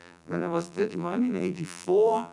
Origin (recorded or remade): remade